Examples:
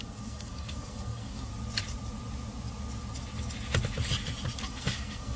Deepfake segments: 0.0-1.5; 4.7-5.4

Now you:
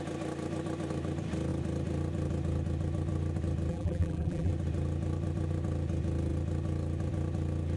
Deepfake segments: 3.7-4.5

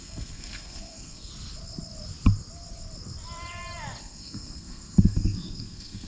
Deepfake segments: 0.0-1.3; 4.0-6.1